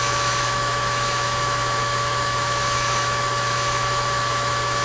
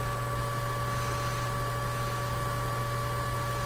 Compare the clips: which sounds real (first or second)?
second